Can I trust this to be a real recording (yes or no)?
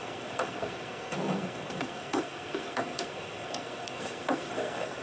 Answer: no